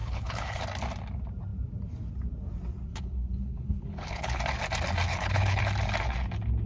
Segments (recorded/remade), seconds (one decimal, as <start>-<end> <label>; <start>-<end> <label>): 0.0-0.6 remade; 0.6-2.9 recorded; 2.9-4.4 remade; 4.4-5.1 recorded; 5.1-5.6 remade; 5.6-6.7 recorded